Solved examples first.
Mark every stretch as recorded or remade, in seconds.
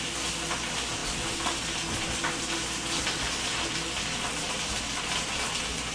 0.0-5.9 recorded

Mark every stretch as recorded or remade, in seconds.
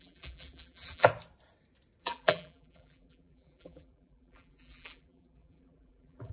0.0-1.1 remade; 1.1-2.0 recorded; 2.0-6.3 remade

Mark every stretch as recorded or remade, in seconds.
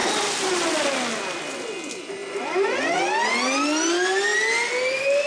0.0-5.3 recorded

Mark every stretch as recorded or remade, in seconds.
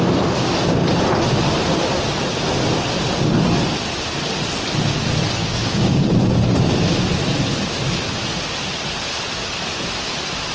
0.0-5.4 recorded; 5.4-6.1 remade; 6.1-10.5 recorded